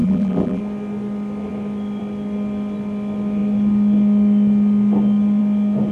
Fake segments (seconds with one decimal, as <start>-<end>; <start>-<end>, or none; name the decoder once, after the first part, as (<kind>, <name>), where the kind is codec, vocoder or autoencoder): 0.0-0.6 (vocoder, BigVGAN v2)